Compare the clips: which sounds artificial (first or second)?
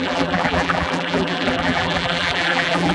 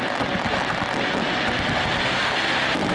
first